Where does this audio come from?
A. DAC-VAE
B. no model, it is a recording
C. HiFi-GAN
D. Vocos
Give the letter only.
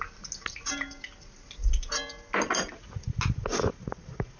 B